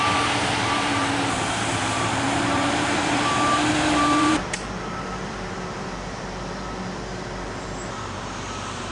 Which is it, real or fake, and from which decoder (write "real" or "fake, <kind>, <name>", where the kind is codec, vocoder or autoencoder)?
fake, vocoder, BigVGAN v2